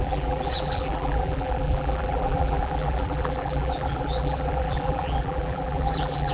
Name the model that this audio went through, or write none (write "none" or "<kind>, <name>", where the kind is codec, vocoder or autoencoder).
vocoder, BigVGAN v2